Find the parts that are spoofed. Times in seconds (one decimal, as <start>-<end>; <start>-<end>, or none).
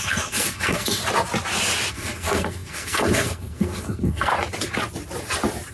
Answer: 0.0-1.0; 1.9-4.3